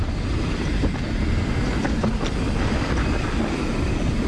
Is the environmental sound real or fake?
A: real